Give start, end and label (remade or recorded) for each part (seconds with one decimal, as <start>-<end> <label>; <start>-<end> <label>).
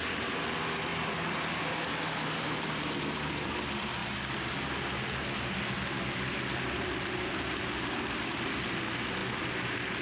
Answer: 0.0-10.0 recorded